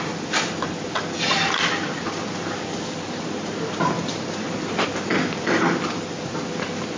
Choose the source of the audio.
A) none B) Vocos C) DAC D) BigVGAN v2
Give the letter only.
D